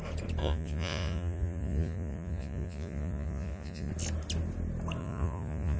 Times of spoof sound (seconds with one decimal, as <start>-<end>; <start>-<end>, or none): 0.4-3.9; 5.0-5.8